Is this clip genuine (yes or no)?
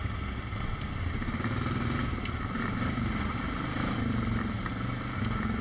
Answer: yes